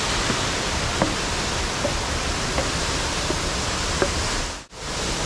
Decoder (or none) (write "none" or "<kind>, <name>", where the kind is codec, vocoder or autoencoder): none